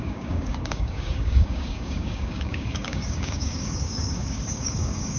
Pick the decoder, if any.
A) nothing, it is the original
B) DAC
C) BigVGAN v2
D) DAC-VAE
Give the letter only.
B